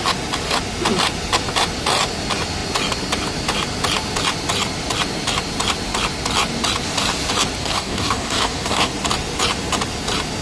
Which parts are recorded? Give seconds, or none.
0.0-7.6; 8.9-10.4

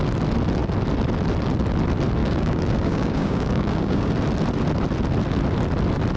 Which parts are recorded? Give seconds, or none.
0.0-2.2; 4.1-6.2

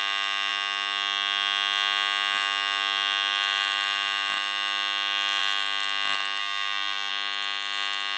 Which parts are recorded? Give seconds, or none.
0.0-6.4; 7.1-8.2

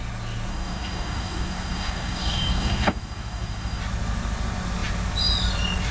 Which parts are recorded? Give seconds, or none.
0.0-0.5; 3.8-5.9

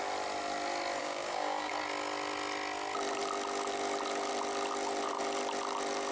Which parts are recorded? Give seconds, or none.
0.0-1.0; 1.7-6.1

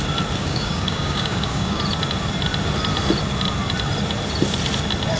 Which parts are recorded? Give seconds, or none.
0.0-0.4; 1.8-5.2